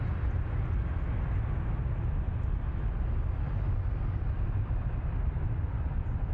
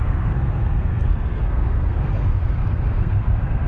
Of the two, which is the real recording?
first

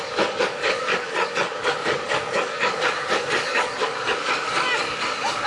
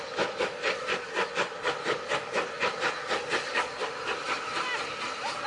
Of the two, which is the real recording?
second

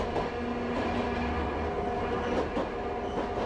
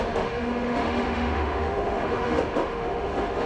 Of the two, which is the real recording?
first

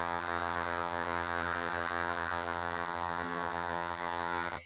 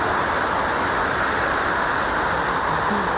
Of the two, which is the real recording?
second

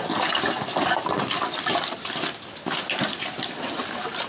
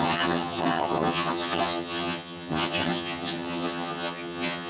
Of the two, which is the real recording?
first